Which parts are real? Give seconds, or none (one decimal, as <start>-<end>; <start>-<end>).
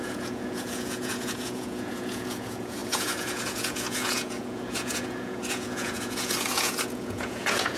none